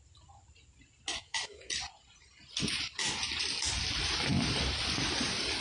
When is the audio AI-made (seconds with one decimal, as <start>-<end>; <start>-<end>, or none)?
1.2-1.7